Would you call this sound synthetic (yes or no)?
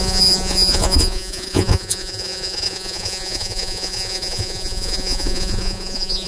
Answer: yes